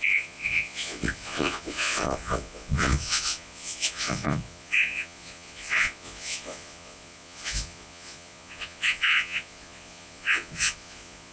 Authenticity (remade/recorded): remade